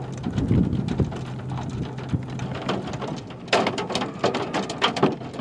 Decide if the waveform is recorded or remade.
recorded